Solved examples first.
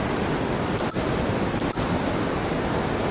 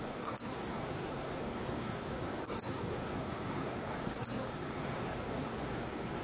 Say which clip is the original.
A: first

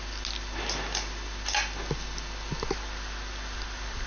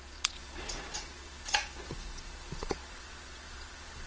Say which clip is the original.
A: first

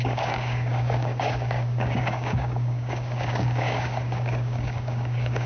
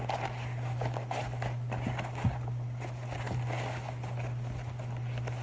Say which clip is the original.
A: second